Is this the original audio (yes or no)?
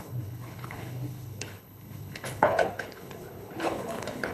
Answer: no